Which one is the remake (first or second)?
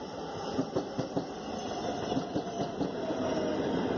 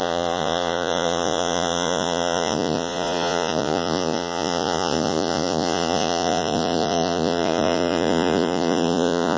second